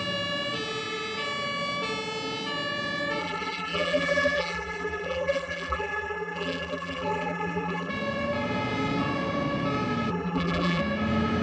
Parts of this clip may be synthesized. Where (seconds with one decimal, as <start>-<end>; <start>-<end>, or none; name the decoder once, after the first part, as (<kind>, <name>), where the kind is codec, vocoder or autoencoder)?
3.2-7.9 (vocoder, BigVGAN v2); 10.1-10.8